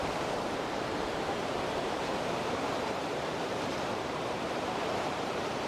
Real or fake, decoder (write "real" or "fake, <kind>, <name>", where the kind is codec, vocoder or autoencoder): fake, vocoder, BigVGAN v2